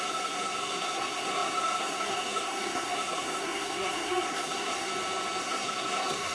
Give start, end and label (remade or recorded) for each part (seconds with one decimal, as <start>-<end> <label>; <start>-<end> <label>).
0.0-4.9 remade; 4.9-5.4 recorded; 5.4-6.3 remade